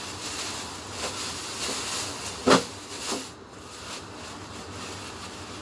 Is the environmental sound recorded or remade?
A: recorded